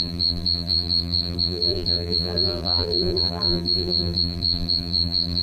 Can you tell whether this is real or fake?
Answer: fake